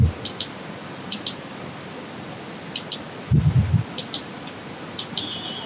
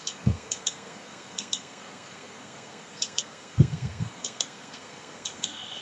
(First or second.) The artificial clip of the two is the second